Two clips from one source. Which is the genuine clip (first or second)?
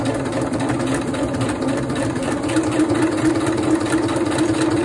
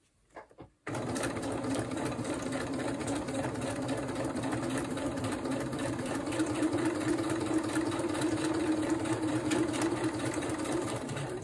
first